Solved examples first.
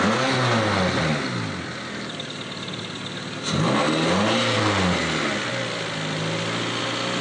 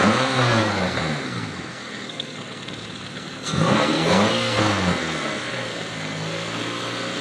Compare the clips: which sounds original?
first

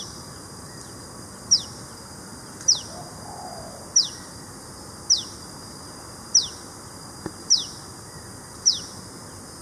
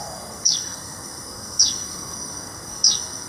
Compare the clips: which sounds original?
first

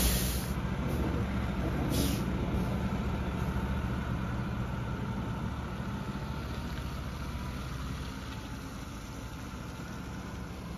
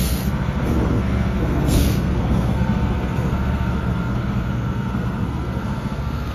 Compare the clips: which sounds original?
first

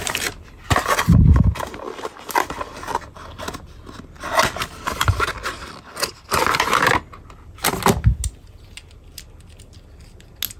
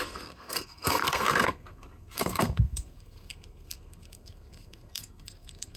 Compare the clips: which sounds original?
first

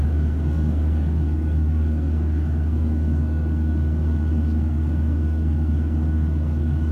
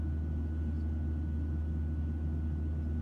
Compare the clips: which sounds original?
second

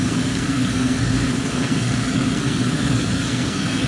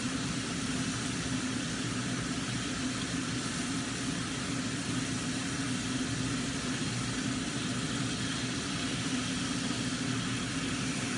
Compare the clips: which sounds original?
second